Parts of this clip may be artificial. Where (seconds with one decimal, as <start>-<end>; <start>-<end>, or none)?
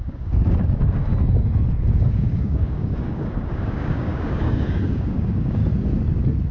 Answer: 0.0-1.1; 2.0-5.6